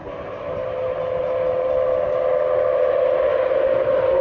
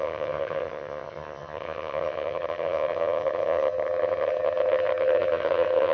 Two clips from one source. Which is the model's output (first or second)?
second